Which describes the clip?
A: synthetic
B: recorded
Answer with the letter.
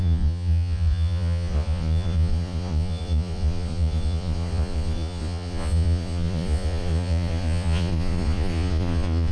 A